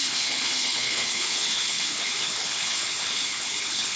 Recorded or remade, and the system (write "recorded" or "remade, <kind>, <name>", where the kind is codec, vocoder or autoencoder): remade, codec, HILCodec